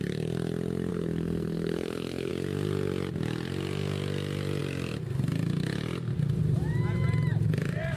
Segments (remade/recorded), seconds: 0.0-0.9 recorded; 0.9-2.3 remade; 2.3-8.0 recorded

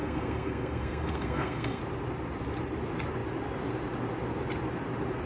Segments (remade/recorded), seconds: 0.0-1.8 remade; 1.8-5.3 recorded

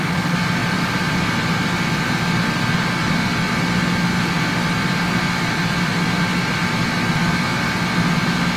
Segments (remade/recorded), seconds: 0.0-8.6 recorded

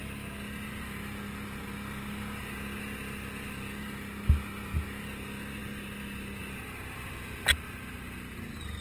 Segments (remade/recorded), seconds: 0.0-8.8 recorded